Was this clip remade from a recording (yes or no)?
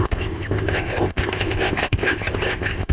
yes